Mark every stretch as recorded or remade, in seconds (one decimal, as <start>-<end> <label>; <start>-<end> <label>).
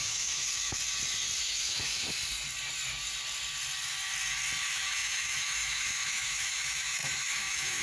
0.0-0.8 remade; 0.8-1.4 recorded; 1.4-2.2 remade; 2.2-4.6 recorded; 4.6-7.8 remade